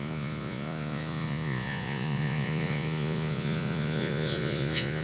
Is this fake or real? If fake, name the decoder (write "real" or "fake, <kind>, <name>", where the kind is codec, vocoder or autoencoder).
fake, vocoder, Vocos